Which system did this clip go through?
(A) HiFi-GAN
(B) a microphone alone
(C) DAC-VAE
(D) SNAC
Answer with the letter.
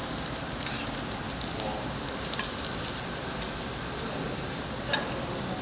B